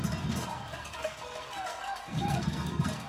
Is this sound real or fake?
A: fake